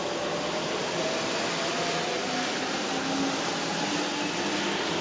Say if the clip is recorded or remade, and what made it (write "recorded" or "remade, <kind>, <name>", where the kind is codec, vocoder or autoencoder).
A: recorded